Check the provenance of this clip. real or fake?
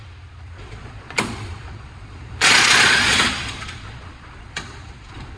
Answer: fake